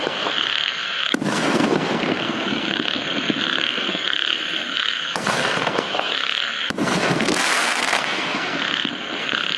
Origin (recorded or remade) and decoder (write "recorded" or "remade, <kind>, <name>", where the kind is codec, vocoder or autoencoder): remade, codec, SNAC